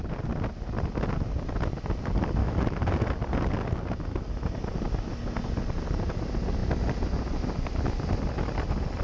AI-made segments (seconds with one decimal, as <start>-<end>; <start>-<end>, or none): 2.4-2.9